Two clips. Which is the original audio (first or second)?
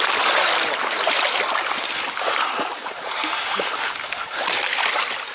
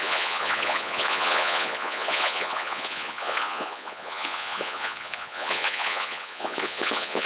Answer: first